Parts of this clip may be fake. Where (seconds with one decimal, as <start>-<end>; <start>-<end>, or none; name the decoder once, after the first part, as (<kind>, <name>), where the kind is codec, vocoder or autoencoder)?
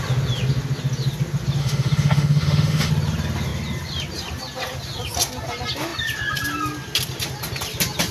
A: 1.6-2.9 (autoencoder, DAC-VAE)